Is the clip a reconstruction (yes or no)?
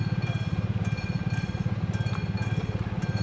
no